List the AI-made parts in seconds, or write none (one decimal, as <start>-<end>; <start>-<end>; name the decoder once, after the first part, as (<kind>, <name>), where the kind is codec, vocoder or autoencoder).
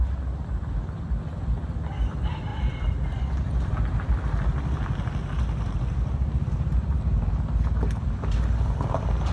2.5-3.7 (vocoder, BigVGAN v2)